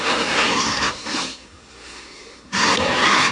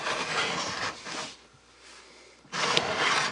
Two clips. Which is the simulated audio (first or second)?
first